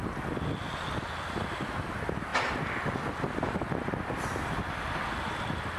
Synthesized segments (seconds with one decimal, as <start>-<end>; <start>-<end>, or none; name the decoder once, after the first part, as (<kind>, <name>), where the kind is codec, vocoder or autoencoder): none